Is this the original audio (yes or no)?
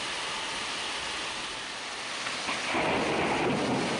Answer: yes